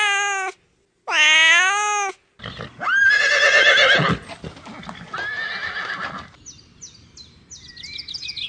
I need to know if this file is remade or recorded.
recorded